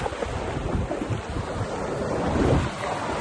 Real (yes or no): yes